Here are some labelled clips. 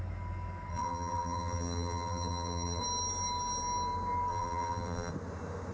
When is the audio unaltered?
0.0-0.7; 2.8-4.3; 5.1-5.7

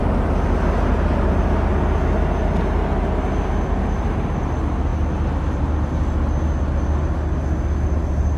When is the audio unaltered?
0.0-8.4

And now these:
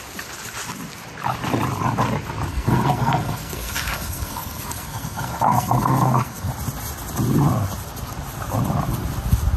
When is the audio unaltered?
0.0-2.5; 6.5-9.6

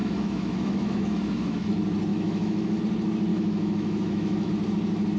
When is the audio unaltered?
1.7-2.1; 2.8-3.3; 4.5-5.2

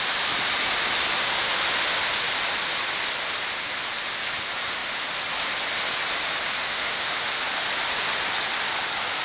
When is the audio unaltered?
0.0-6.6; 7.4-9.2